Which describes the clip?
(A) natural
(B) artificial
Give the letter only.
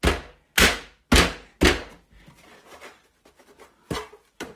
A